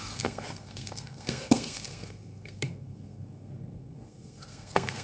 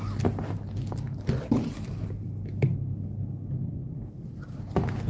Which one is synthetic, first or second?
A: first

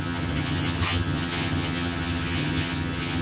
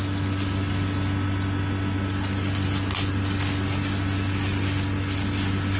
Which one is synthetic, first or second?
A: first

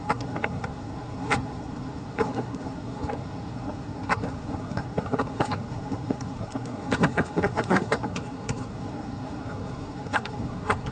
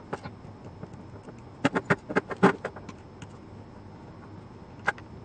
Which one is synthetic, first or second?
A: first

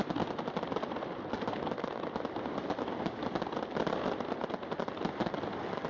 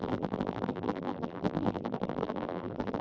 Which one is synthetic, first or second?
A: second